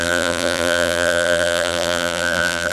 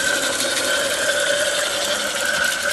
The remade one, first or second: first